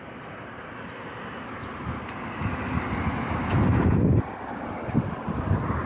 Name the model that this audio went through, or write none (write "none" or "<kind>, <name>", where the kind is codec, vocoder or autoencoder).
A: none